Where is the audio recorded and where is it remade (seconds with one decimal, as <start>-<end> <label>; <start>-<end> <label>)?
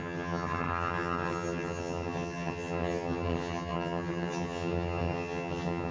0.0-5.9 remade